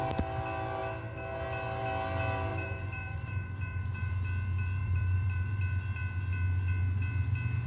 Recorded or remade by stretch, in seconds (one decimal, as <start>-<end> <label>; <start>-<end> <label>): 0.0-2.5 recorded; 2.5-4.1 remade; 4.1-4.8 recorded; 4.8-5.6 remade; 5.6-7.7 recorded